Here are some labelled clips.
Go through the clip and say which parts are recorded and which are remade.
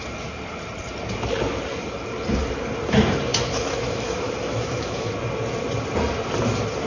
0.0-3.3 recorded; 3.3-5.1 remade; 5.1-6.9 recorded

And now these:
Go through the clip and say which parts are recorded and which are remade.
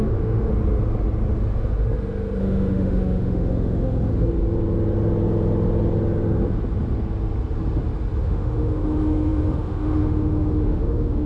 0.0-0.5 remade; 0.5-2.4 recorded; 2.4-4.1 remade; 4.1-8.2 recorded; 8.2-11.3 remade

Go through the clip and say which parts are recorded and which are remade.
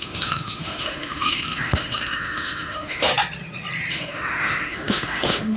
0.0-3.1 remade; 3.1-3.9 recorded; 3.9-5.6 remade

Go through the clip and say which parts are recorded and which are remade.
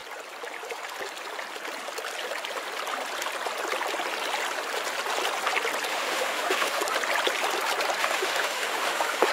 0.0-5.9 recorded; 5.9-6.8 remade; 6.8-8.0 recorded; 8.0-9.3 remade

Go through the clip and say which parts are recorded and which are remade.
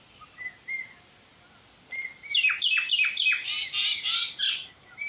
0.0-5.1 recorded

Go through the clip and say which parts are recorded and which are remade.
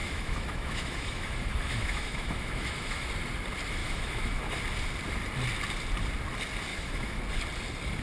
0.0-3.1 remade; 3.1-3.8 recorded; 3.8-4.6 remade; 4.6-6.7 recorded; 6.7-7.2 remade; 7.2-8.0 recorded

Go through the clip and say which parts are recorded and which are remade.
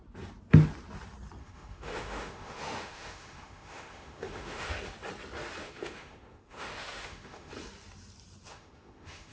0.0-1.4 recorded; 1.4-4.7 remade; 4.7-5.6 recorded; 5.6-7.5 remade; 7.5-8.5 recorded; 8.5-9.3 remade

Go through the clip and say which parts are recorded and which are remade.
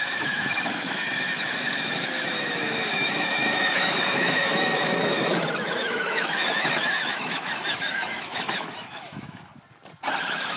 0.0-9.5 remade; 9.5-10.2 recorded; 10.2-10.6 remade